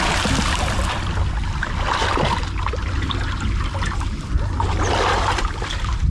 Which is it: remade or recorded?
recorded